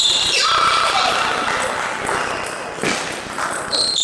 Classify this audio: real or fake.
real